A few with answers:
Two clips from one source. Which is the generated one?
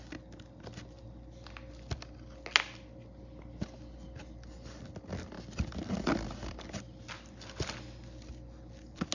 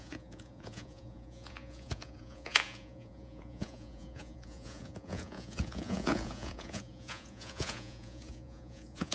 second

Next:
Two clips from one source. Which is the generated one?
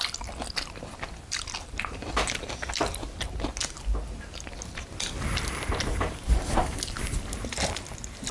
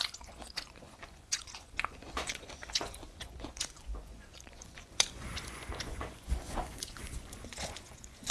second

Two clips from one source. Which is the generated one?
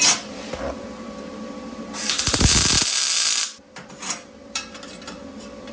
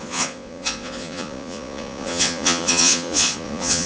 second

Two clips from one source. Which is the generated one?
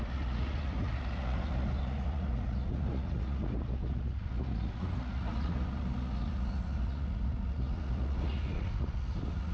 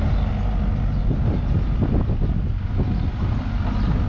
first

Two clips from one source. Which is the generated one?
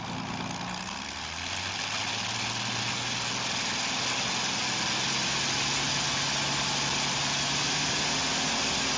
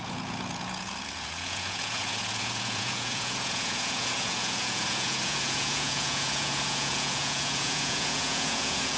second